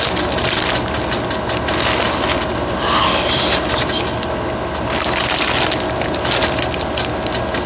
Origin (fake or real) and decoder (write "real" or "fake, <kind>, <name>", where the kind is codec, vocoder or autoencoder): fake, vocoder, BigVGAN v2